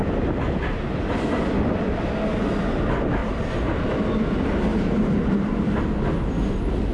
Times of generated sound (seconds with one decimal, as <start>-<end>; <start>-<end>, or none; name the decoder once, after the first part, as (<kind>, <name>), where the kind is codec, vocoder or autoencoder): 3.2-3.8 (vocoder, BigVGAN v2); 4.7-5.7